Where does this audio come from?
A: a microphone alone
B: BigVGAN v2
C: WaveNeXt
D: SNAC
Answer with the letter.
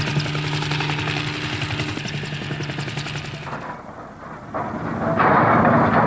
A